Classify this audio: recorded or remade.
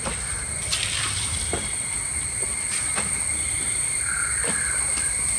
remade